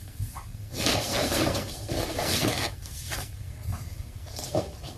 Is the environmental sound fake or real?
fake